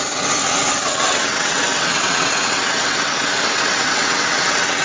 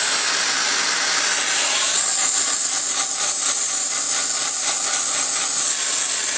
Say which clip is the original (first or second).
second